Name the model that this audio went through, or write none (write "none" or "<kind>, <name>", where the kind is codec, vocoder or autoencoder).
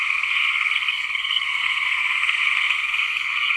codec, SNAC